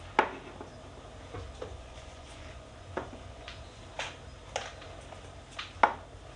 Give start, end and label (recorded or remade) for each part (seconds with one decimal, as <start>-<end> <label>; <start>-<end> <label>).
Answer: 0.0-1.7 recorded; 1.7-3.8 remade; 3.8-6.4 recorded